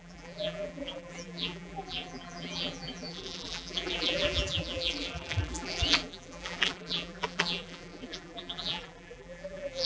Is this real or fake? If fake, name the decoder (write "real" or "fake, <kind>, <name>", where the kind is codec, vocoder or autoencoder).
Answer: fake, vocoder, BigVGAN v2